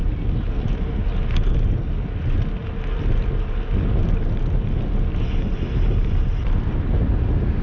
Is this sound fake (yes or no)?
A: no